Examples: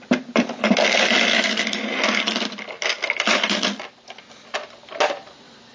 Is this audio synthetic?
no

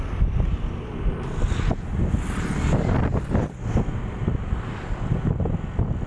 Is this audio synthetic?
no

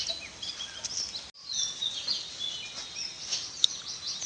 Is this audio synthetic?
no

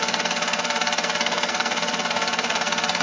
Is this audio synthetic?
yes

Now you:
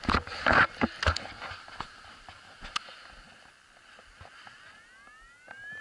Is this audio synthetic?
no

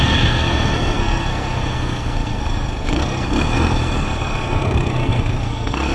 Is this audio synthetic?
yes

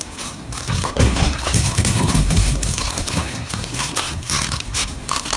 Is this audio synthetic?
yes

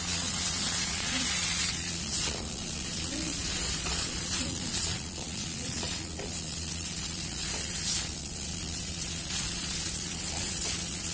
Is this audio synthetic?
yes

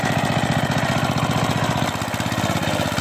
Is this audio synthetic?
no